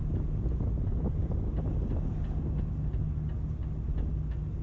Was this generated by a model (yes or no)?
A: no